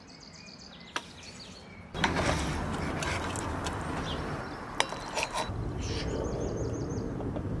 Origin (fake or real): real